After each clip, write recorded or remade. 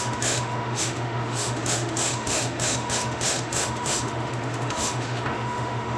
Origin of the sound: remade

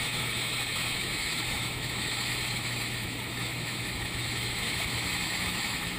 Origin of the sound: remade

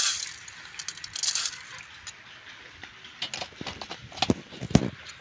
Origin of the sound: recorded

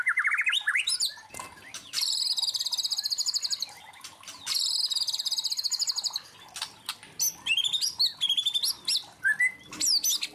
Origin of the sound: recorded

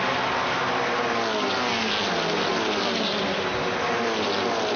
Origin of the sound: recorded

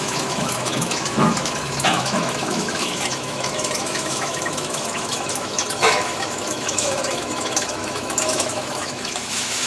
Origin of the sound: remade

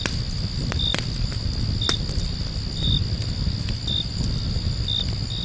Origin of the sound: recorded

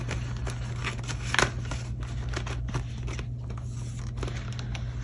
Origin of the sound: recorded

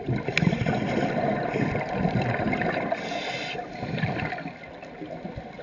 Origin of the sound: recorded